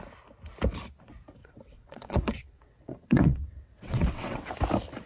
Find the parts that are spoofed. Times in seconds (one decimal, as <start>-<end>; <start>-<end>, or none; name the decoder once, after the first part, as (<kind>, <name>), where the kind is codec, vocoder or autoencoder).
1.4-4.5 (vocoder, WaveNeXt)